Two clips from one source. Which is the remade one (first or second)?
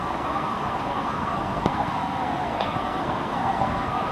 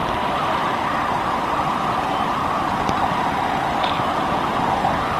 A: first